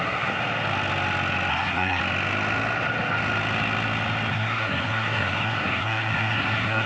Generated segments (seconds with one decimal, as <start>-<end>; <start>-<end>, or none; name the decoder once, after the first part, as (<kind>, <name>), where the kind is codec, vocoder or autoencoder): 0.0-0.4 (codec, SNAC); 1.5-2.0; 4.3-6.9